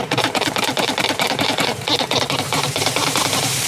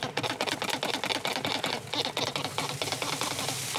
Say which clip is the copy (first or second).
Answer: first